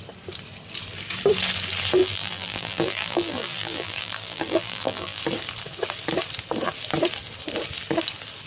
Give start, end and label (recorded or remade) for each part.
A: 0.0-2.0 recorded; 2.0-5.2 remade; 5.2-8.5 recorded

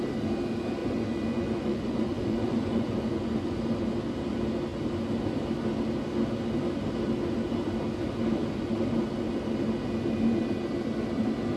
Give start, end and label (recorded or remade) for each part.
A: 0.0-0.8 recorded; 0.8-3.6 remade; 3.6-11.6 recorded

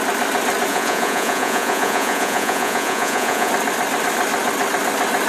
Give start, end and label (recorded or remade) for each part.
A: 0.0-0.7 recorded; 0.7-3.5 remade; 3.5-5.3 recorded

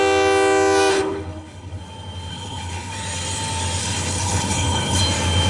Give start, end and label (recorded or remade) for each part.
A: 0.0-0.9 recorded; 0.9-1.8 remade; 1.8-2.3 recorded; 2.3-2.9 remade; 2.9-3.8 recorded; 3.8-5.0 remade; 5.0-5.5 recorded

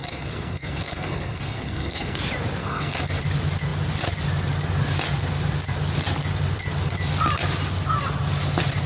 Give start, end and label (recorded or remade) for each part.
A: 0.0-2.2 remade; 2.2-2.6 recorded; 2.6-3.2 remade; 3.2-8.9 recorded